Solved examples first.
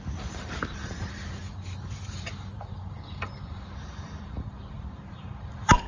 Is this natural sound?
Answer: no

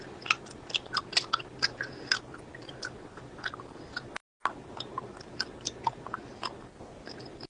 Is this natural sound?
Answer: yes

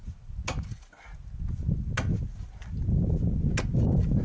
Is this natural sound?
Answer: yes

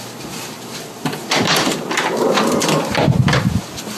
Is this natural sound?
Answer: no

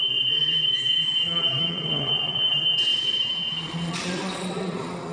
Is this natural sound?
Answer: no